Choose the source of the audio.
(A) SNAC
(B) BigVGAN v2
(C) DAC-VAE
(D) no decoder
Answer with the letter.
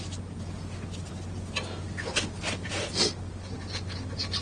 D